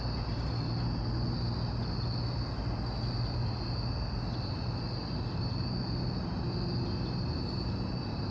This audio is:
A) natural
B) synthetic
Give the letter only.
A